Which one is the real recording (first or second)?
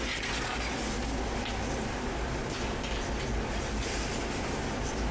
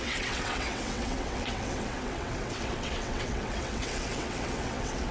first